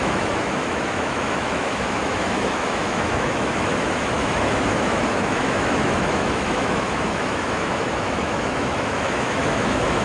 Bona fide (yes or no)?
no